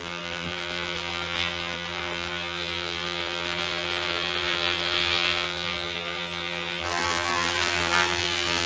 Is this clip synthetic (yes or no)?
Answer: yes